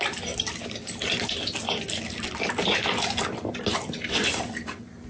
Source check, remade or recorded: recorded